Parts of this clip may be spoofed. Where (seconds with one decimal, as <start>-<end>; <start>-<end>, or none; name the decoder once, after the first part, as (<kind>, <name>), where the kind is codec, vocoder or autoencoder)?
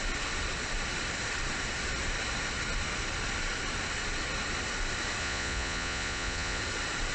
5.2-6.6 (vocoder, Vocos)